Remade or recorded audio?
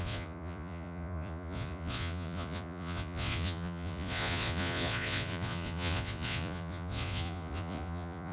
remade